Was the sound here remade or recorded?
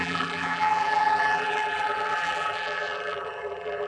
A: remade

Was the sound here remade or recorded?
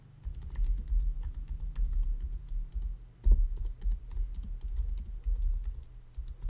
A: recorded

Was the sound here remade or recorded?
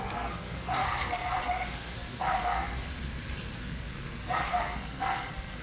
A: remade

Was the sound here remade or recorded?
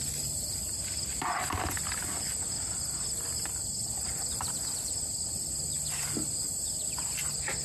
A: recorded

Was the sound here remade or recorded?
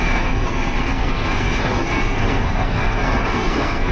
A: remade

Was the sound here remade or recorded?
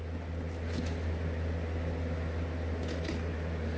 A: recorded